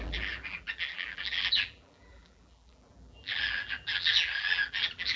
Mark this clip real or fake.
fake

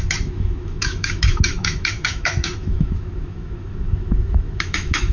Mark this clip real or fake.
fake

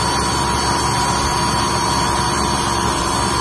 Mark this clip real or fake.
real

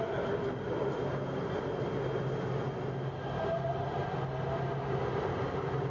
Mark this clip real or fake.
real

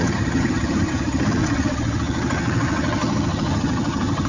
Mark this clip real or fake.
fake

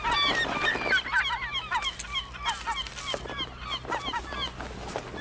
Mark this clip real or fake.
real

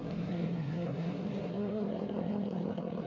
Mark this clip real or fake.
fake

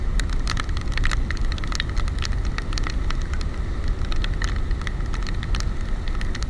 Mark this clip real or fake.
real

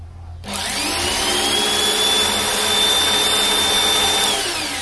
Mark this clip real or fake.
real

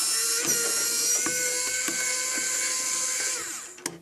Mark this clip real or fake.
real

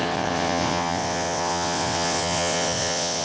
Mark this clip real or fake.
fake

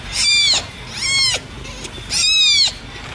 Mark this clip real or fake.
real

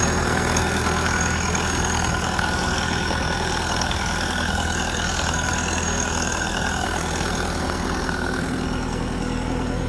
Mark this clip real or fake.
fake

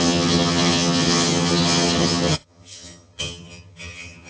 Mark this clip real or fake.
fake